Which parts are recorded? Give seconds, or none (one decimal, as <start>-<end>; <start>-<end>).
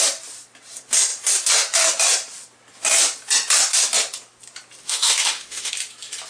0.0-4.8; 5.7-6.3